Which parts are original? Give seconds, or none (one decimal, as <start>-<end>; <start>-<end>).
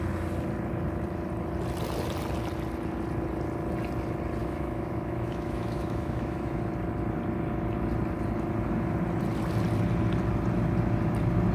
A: 0.0-4.4; 6.6-11.5